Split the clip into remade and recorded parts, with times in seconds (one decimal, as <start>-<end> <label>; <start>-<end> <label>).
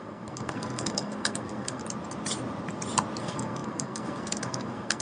0.0-1.8 remade; 1.8-3.2 recorded; 3.2-5.0 remade